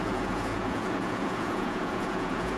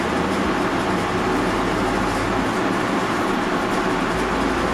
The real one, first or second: second